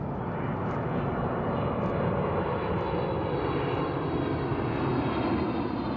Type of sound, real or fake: real